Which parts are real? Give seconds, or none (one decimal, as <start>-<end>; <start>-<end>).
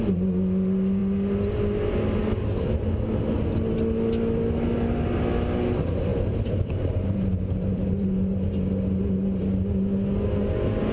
0.0-6.1; 8.6-10.9